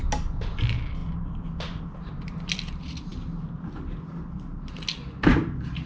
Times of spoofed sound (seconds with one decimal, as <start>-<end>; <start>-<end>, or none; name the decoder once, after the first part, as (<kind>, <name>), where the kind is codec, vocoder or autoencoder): none